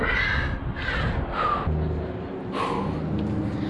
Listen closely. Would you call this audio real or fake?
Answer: real